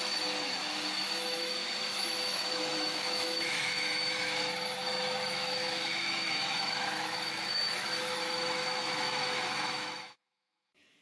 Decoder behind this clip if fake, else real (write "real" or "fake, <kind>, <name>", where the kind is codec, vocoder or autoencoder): fake, autoencoder, DAC-VAE